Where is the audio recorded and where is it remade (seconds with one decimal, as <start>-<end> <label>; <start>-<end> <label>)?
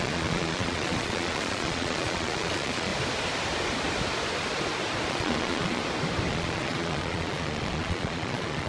0.0-2.9 remade; 2.9-5.1 recorded; 5.1-5.8 remade; 5.8-6.3 recorded; 6.3-8.7 remade